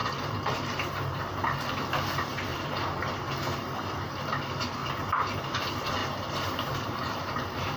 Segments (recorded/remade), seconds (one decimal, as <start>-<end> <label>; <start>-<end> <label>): 0.0-1.2 remade; 1.2-2.5 recorded; 2.5-3.2 remade; 3.2-4.8 recorded; 4.8-5.4 remade; 5.4-6.0 recorded; 6.0-7.8 remade